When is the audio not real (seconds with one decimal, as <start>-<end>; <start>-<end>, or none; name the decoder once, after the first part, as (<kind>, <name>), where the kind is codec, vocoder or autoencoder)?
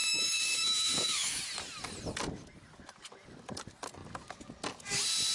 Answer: 0.0-1.4 (autoencoder, DAC-VAE)